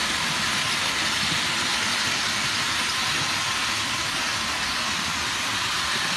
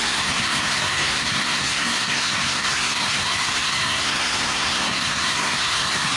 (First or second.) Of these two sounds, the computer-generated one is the second